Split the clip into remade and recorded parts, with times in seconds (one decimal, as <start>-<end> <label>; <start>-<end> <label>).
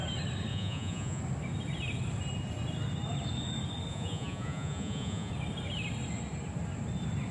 0.0-0.5 recorded; 0.5-1.2 remade; 1.2-3.9 recorded; 3.9-5.3 remade; 5.3-7.3 recorded